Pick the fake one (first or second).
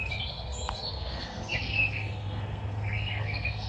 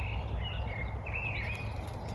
first